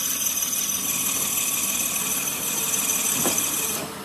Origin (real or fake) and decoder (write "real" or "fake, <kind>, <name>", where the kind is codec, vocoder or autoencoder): fake, vocoder, BigVGAN v2